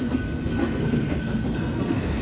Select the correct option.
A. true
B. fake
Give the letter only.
B